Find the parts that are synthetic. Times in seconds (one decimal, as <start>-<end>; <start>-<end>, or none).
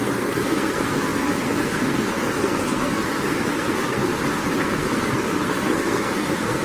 0.0-4.1; 4.6-6.6